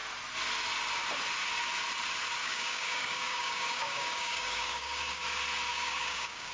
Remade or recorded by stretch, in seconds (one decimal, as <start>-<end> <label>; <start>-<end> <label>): 0.0-2.4 recorded; 2.4-5.2 remade; 5.2-5.7 recorded; 5.7-6.5 remade